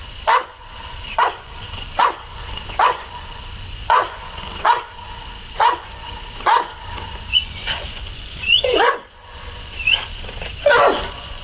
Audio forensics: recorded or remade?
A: remade